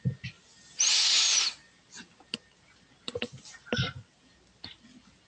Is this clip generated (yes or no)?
no